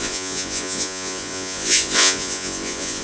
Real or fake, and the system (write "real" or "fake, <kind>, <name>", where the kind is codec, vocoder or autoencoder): fake, vocoder, Vocos